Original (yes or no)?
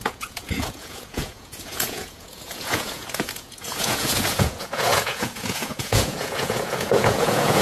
no